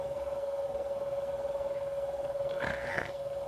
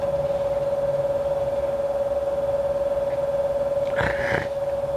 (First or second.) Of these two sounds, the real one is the second